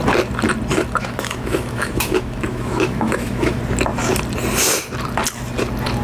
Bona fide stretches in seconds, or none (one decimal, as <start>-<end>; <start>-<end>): 0.0-1.0; 3.6-6.0